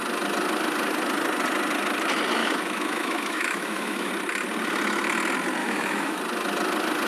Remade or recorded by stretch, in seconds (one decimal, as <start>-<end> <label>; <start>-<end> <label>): 0.0-2.4 recorded; 2.4-4.1 remade; 4.1-5.6 recorded; 5.6-6.2 remade; 6.2-7.1 recorded